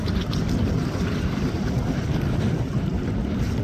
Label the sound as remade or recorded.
recorded